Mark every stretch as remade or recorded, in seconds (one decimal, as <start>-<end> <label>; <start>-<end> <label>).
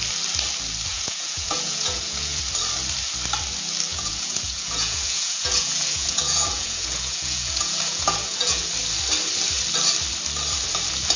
0.0-0.9 recorded; 0.9-2.4 remade; 2.4-3.9 recorded; 3.9-8.7 remade; 8.7-11.2 recorded